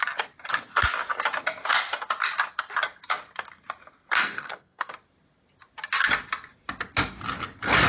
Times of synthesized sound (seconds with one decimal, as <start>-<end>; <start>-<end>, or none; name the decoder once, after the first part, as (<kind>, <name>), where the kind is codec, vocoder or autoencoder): 4.2-4.9 (codec, SNAC)